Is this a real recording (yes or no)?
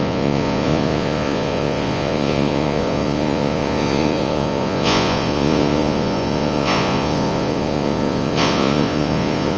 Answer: no